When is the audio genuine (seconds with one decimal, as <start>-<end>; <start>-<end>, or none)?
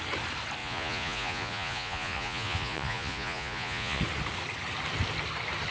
0.0-0.6; 4.0-5.7